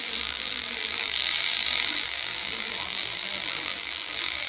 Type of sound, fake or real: fake